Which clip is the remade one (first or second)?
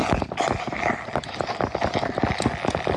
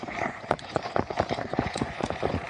second